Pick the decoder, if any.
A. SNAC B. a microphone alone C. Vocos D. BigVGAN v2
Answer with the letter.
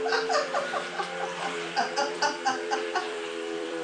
D